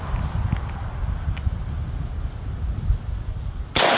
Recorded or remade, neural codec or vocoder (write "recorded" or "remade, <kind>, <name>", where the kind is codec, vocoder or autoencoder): recorded